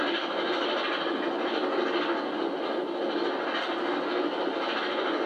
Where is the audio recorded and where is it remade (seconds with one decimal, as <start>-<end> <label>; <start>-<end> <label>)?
0.0-5.3 recorded